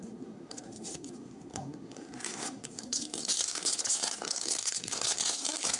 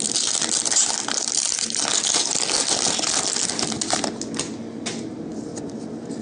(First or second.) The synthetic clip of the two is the first